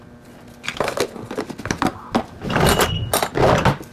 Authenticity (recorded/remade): recorded